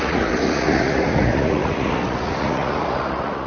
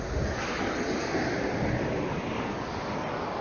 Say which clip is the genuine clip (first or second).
second